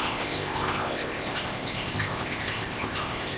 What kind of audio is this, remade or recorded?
remade